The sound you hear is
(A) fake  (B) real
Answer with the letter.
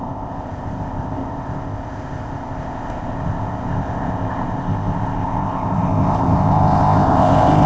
A